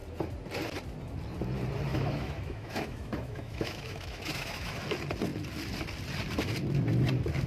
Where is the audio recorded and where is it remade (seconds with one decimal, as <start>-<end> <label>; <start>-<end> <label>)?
0.0-1.9 recorded; 1.9-4.8 remade; 4.8-7.5 recorded